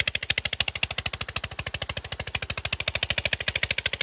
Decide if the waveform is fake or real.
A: real